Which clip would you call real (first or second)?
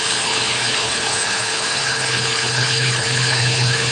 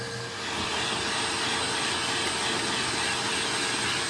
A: second